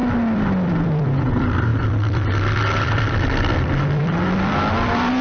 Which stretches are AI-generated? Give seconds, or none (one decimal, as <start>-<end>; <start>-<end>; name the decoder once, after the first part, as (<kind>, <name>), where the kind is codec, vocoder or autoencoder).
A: 0.0-5.2 (vocoder, BigVGAN v2)